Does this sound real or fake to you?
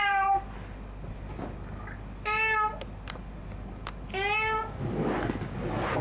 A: real